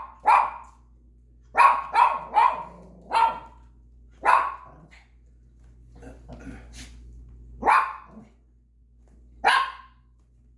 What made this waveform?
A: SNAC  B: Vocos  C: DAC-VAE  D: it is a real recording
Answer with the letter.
D